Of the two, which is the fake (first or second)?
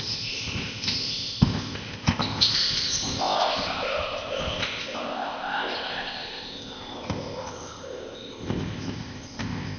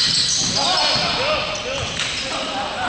first